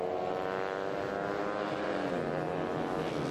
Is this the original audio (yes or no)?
yes